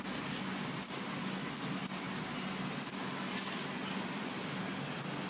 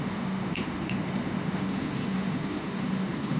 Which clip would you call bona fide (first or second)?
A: first